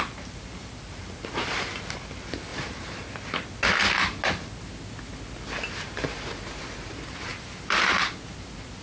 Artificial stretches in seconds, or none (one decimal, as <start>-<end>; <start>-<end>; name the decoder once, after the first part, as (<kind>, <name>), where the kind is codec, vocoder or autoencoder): 2.5-3.1 (vocoder, BigVGAN v2); 7.3-8.1

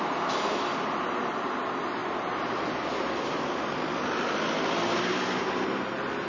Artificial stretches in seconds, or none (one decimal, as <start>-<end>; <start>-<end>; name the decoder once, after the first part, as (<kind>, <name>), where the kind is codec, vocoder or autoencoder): none

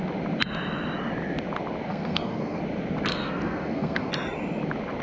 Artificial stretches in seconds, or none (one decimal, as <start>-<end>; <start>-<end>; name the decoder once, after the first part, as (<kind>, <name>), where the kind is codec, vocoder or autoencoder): 1.9-2.6 (codec, SNAC); 3.1-4.1